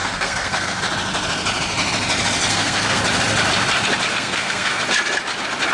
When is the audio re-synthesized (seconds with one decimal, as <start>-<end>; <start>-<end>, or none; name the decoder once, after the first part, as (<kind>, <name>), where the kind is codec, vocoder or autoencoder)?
0.0-0.8 (codec, SNAC); 2.5-3.0; 4.1-4.8